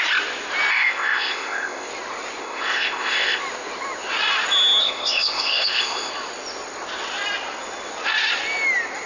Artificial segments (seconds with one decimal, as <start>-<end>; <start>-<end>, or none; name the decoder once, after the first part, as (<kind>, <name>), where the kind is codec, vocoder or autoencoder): 0.7-1.9 (codec, ZipCodec); 2.4-3.4; 4.8-6.1